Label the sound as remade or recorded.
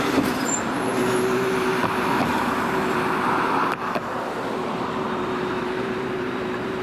remade